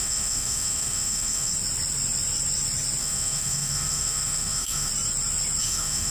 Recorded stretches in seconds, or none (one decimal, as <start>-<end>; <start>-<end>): 1.5-3.0; 4.9-5.6